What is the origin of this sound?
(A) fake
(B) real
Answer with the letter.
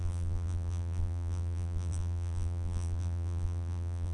A